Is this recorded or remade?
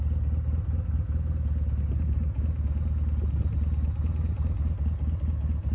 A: recorded